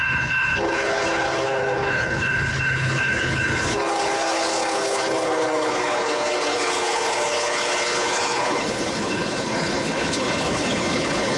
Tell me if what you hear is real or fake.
fake